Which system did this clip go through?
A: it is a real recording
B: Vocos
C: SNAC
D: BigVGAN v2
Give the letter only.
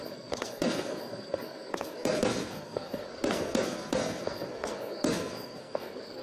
C